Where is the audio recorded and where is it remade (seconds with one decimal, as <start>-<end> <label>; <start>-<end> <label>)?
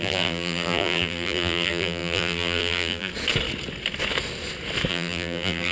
0.0-3.1 remade; 3.1-4.9 recorded; 4.9-5.7 remade